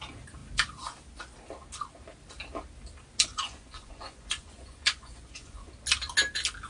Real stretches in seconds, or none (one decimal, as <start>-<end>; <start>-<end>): 0.0-3.3; 5.7-6.7